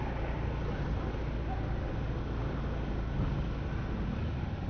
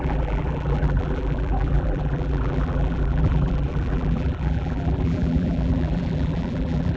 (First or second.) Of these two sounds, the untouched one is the first